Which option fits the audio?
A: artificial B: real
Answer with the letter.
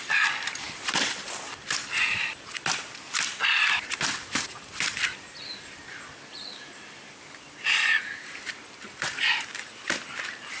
A